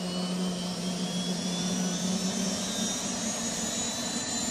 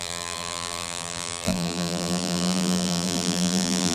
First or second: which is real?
first